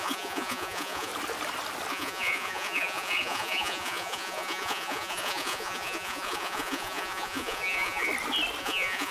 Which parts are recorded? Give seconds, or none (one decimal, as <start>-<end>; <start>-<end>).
1.1-1.9; 8.1-8.6